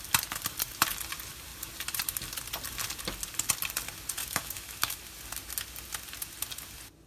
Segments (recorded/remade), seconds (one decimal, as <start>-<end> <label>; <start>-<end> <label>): 0.0-4.2 recorded; 4.2-5.0 remade; 5.0-7.1 recorded